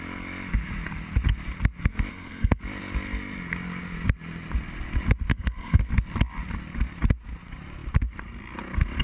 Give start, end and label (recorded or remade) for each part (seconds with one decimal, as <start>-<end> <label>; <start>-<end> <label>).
0.0-2.1 recorded; 2.1-2.6 remade; 2.6-5.3 recorded; 5.3-5.8 remade; 5.8-9.0 recorded